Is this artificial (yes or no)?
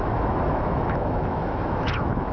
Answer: yes